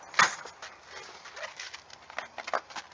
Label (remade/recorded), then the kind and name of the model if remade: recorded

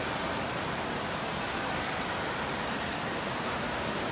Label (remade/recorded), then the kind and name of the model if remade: recorded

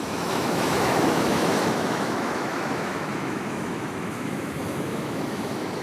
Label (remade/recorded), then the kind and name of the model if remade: remade, autoencoder, DAC-VAE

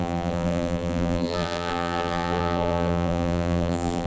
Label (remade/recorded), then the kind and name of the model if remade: remade, vocoder, BigVGAN v2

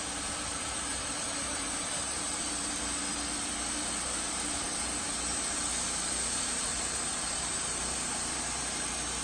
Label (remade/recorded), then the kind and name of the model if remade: remade, vocoder, BigVGAN v2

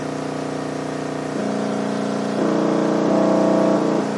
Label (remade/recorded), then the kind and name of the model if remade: recorded